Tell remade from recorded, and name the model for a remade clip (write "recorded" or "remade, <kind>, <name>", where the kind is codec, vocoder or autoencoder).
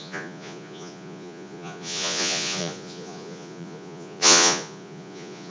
remade, vocoder, Vocos